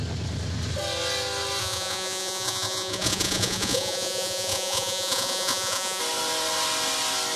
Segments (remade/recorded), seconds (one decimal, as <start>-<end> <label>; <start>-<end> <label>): 0.0-1.6 recorded; 1.6-6.0 remade; 6.0-7.4 recorded